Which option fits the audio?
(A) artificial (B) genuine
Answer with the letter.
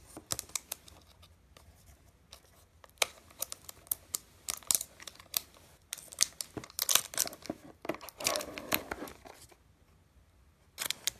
B